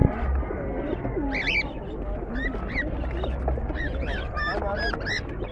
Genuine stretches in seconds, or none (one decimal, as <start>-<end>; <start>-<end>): 0.0-5.5